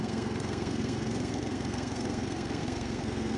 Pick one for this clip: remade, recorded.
remade